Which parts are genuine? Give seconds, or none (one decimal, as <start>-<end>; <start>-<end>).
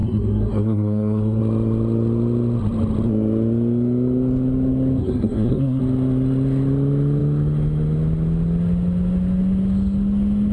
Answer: 1.4-5.0; 5.8-10.5